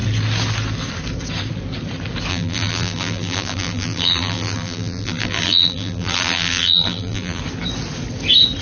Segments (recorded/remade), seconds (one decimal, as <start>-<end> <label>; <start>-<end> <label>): 0.0-2.3 recorded; 2.3-7.4 remade; 7.4-8.6 recorded